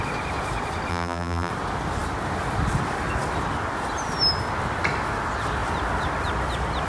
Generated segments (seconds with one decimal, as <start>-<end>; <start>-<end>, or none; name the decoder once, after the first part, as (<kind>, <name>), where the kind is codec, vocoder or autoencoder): 0.9-1.5 (vocoder, BigVGAN v2)